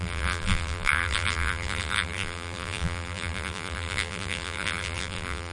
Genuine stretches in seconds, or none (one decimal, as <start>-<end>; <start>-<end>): none